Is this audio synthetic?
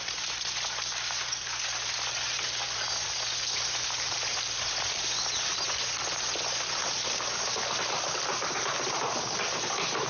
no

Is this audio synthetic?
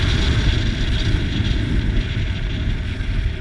no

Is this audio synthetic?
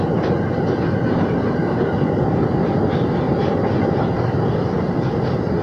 no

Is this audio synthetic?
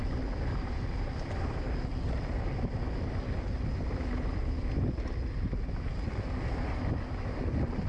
no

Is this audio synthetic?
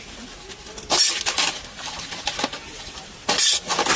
no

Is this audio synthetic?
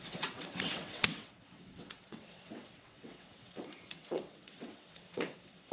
yes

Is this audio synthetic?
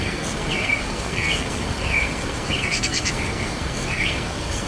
yes